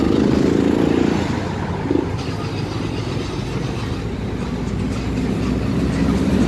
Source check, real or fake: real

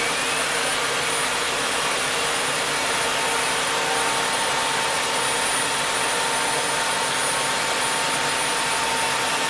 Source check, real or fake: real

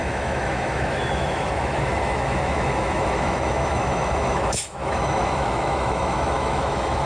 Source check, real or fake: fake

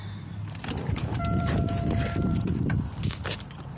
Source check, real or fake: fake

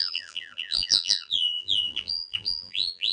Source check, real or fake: fake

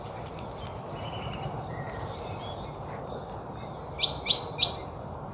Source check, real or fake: real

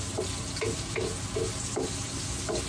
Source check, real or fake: real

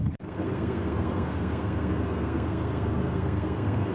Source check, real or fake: fake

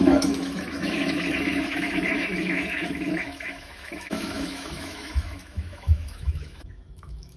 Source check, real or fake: fake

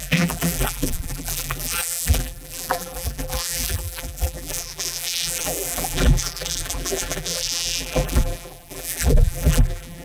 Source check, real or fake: fake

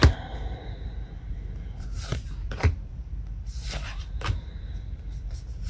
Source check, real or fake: fake